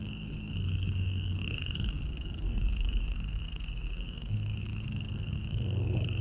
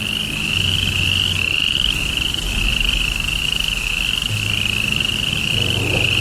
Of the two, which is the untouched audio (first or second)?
second